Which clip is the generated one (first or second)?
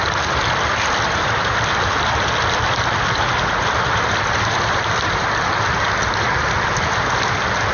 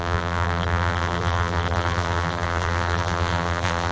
second